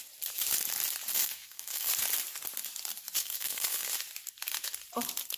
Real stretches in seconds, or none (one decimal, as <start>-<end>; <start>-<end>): 0.0-1.1; 1.9-3.2; 3.9-5.4